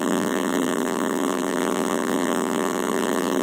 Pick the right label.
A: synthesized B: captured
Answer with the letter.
A